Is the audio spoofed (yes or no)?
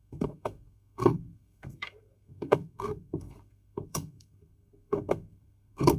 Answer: yes